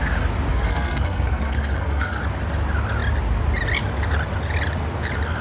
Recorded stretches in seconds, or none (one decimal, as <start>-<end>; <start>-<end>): 0.0-0.5; 2.2-5.4